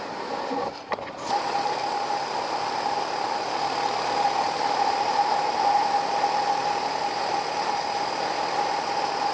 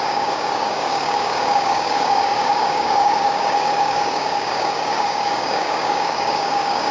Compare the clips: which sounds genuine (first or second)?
first